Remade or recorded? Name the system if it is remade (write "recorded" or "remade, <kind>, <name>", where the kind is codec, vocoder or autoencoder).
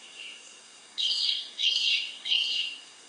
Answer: remade, codec, SNAC